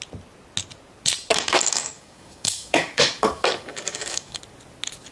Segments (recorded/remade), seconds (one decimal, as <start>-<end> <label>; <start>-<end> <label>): 0.0-1.3 recorded; 1.3-4.4 remade; 4.4-5.1 recorded